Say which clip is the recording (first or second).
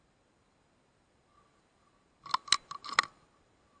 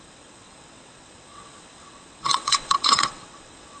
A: first